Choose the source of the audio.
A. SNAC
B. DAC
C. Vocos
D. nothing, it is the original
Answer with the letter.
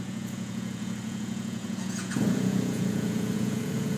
C